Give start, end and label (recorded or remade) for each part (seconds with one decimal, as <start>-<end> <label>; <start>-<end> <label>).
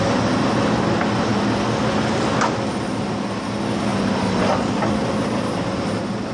0.0-6.3 recorded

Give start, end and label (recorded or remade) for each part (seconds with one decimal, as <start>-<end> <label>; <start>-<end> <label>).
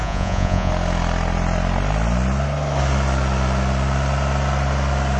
0.0-0.7 remade; 0.7-5.2 recorded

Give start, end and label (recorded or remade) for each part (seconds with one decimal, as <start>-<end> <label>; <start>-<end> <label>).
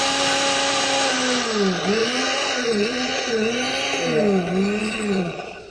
0.0-2.0 recorded; 2.0-3.3 remade; 3.3-4.8 recorded; 4.8-5.7 remade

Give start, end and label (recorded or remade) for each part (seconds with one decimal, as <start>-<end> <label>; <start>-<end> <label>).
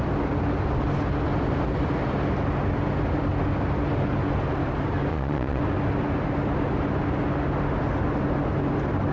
0.0-5.1 recorded; 5.1-5.6 remade; 5.6-9.1 recorded